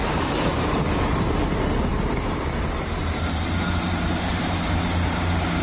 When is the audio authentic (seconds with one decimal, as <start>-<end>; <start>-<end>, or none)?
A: 1.0-1.9